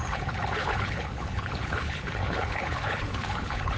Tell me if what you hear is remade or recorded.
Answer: remade